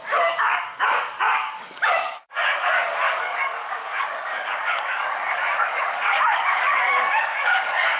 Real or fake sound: fake